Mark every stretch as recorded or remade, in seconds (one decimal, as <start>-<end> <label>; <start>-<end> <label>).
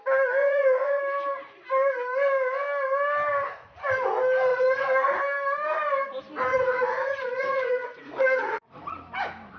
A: 0.0-0.4 recorded; 0.4-1.0 remade; 1.0-4.5 recorded; 4.5-5.2 remade; 5.2-6.5 recorded; 6.5-8.9 remade; 8.9-9.6 recorded